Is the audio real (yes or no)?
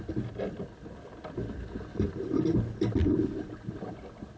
yes